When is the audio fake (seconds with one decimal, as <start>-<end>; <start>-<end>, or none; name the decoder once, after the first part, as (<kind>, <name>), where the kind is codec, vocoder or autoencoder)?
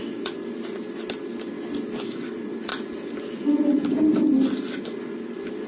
none